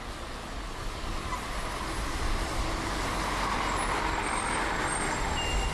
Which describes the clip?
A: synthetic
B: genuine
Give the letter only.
B